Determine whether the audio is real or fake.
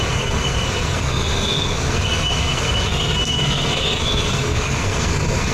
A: fake